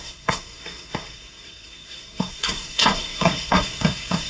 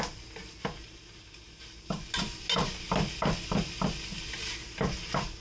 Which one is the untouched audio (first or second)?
second